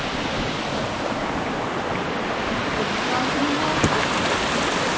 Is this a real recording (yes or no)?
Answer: yes